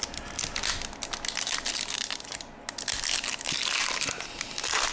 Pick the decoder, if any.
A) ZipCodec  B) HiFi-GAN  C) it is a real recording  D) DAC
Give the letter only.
C